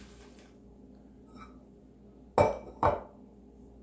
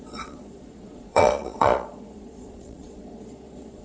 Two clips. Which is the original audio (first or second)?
first